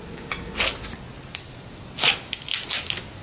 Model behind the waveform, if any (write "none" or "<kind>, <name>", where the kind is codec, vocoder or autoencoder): none